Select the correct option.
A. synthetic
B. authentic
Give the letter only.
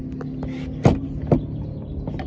B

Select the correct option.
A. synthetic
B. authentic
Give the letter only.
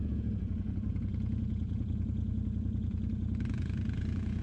A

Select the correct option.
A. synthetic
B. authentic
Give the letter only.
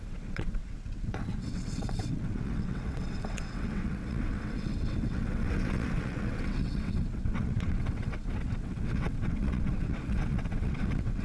A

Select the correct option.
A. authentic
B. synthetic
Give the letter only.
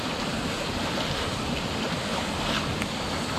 A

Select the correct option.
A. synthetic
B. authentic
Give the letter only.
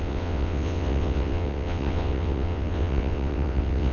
A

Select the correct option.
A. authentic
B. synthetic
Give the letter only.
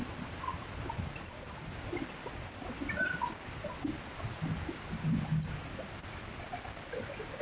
A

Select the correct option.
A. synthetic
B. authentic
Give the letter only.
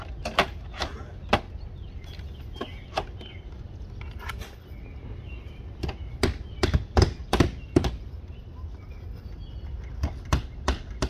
B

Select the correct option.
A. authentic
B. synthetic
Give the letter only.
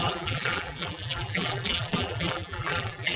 B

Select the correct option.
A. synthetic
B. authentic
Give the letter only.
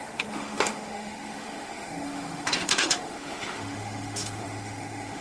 A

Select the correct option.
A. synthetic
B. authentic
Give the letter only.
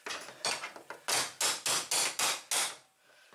B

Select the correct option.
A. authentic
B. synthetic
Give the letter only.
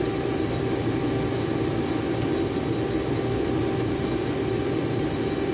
B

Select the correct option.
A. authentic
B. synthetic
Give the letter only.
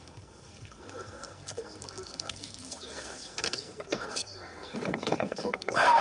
B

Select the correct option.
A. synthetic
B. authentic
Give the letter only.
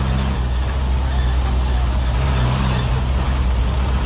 B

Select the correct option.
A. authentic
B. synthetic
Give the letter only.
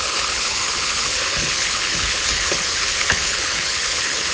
B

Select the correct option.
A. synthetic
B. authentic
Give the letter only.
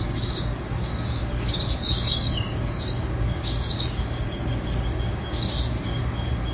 A